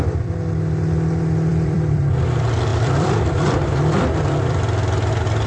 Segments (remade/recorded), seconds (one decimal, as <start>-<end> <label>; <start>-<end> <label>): 0.0-1.5 recorded; 1.5-2.1 remade; 2.1-2.7 recorded; 2.7-4.0 remade; 4.0-5.5 recorded